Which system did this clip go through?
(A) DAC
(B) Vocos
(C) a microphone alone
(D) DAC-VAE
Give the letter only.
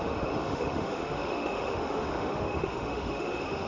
D